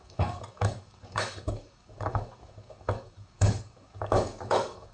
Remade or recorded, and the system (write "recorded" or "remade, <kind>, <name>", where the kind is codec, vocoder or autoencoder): remade, codec, DAC